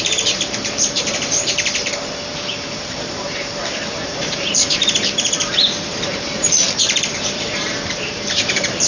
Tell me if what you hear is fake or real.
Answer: fake